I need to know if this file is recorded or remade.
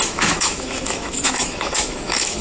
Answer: remade